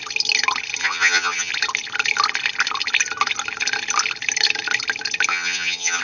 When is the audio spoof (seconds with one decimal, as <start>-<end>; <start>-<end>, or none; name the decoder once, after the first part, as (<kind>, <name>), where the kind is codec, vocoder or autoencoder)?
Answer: 0.8-1.5 (vocoder, HiFi-GAN); 5.3-6.0